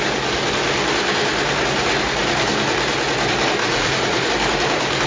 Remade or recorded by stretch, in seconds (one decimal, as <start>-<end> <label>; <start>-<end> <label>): 0.0-3.6 recorded; 3.6-4.3 remade; 4.3-5.1 recorded